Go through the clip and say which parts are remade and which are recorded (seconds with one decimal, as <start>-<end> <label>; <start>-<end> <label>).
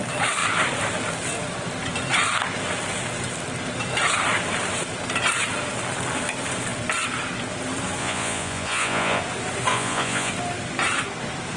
0.0-8.0 recorded; 8.0-9.2 remade; 9.2-9.7 recorded; 9.7-10.3 remade; 10.3-11.6 recorded